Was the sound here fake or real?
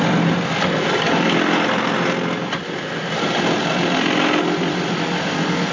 real